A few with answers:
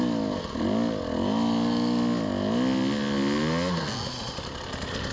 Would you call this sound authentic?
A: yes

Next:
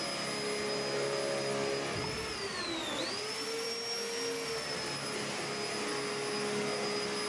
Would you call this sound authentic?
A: yes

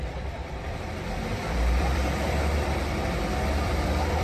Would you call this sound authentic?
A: no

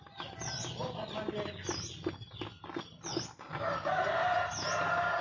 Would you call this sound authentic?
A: yes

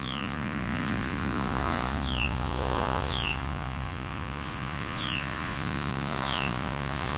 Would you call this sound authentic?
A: no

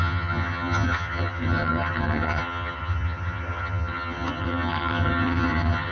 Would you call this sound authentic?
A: no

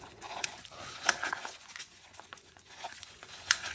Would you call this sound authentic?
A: no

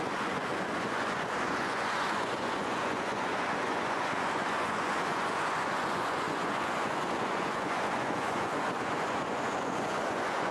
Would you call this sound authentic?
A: no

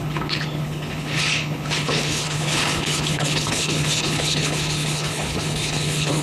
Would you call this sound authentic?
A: no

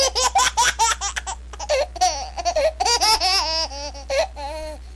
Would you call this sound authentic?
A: yes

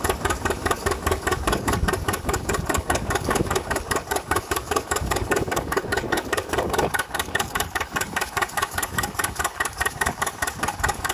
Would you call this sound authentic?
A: no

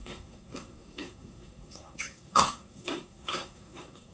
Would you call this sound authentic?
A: no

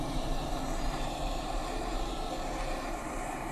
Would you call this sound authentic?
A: no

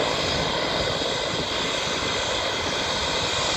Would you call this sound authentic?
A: yes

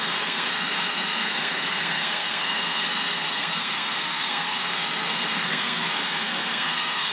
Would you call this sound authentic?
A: no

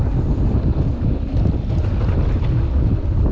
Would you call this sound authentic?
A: yes